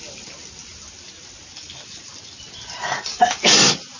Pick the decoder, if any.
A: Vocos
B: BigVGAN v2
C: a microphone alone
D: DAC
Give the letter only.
C